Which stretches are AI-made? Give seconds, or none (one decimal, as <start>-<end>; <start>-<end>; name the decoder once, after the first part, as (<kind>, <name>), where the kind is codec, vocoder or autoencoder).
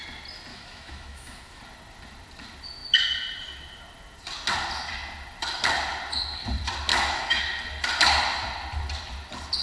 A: 0.5-1.6 (autoencoder, DAC-VAE); 6.9-7.4